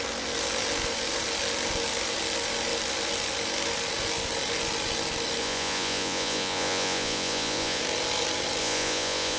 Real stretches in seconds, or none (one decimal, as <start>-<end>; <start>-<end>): 0.0-5.4; 7.8-8.6